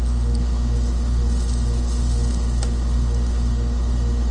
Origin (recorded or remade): recorded